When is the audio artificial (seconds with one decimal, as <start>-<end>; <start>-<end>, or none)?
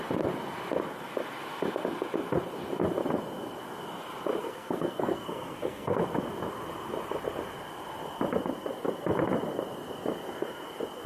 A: 4.4-6.0